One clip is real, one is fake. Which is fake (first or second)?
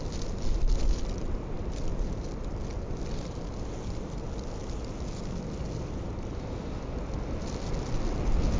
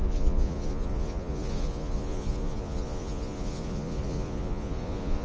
second